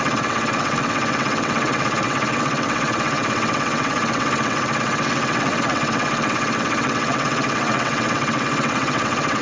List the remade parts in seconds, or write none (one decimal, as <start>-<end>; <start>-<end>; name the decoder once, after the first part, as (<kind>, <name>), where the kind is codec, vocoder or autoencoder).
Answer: 0.0-9.4 (vocoder, WaveNeXt)